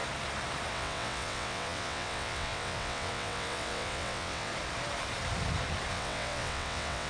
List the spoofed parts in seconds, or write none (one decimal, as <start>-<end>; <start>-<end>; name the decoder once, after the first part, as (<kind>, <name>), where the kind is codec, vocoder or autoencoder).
0.7-4.5 (vocoder, WaveNeXt); 5.9-7.1